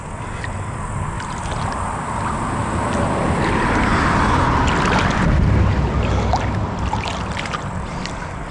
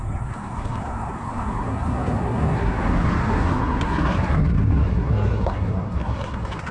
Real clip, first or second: first